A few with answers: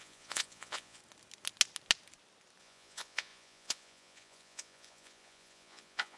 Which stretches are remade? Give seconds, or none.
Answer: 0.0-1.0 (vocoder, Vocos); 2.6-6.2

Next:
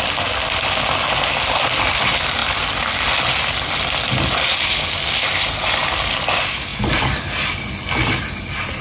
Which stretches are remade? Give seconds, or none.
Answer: none

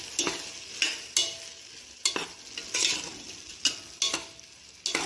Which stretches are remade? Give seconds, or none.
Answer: none

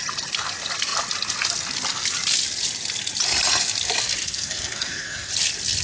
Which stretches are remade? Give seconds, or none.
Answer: 4.2-5.3 (codec, SNAC)

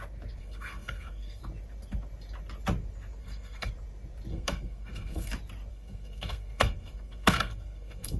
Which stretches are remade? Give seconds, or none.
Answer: 0.4-1.4 (codec, SNAC); 3.2-3.7; 4.3-5.3; 5.7-8.2

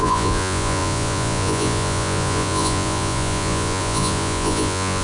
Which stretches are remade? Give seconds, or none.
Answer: 0.0-5.0 (vocoder, Vocos)

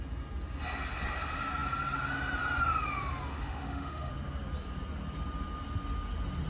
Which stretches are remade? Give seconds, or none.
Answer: 3.3-4.1 (autoencoder, DAC-VAE)